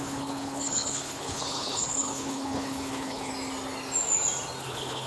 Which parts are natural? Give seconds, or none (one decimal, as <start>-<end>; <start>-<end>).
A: 3.3-4.6